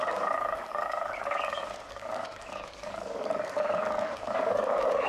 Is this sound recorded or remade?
remade